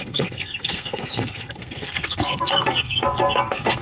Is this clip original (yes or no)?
no